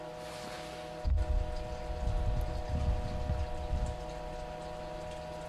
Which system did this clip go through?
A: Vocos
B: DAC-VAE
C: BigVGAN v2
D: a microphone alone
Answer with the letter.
D